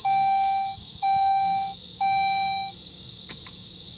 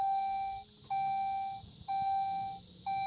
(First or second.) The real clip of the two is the second